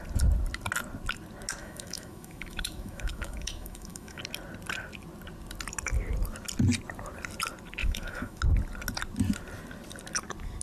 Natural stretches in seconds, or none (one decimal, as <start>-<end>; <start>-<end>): 0.0-1.6; 4.2-7.8; 8.4-10.6